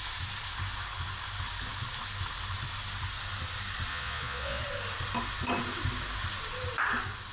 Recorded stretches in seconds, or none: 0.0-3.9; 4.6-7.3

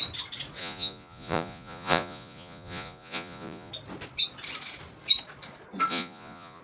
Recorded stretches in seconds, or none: 0.0-0.6; 3.7-5.9